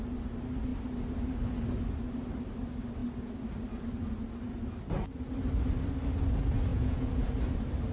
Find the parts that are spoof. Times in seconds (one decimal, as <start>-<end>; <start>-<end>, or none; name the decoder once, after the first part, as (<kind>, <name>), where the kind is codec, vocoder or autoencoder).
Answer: 6.7-7.3 (vocoder, Vocos)